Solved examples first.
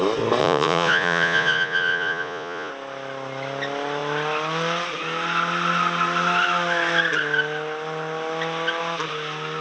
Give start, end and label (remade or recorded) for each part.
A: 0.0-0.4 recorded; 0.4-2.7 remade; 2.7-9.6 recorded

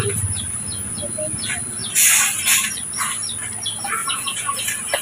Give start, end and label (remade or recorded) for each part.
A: 0.0-4.0 recorded; 4.0-4.6 remade; 4.6-5.0 recorded

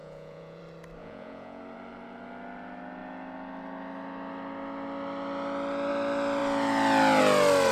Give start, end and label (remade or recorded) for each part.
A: 0.0-0.6 remade; 0.6-1.0 recorded; 1.0-1.6 remade; 1.6-7.7 recorded

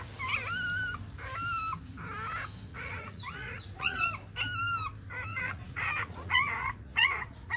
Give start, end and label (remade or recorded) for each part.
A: 0.0-2.7 recorded; 2.7-4.0 remade; 4.0-5.3 recorded; 5.3-7.6 remade

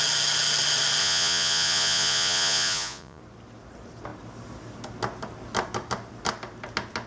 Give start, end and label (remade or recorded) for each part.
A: 0.0-1.0 recorded; 1.0-3.2 remade; 3.2-7.1 recorded

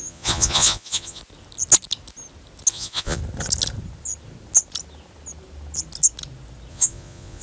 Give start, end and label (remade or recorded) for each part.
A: 0.0-1.2 remade; 1.2-2.7 recorded; 2.7-3.2 remade; 3.2-6.7 recorded; 6.7-7.4 remade